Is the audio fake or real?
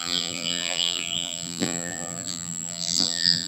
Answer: fake